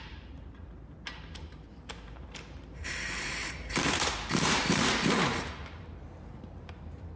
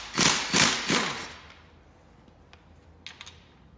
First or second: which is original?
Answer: second